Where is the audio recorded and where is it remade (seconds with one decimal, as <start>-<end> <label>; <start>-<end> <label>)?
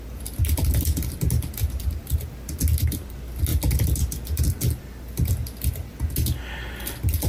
0.0-7.3 recorded